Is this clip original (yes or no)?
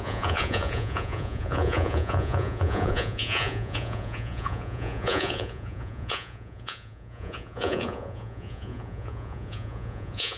no